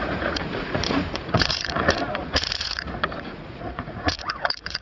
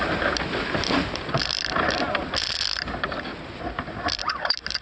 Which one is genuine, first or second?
second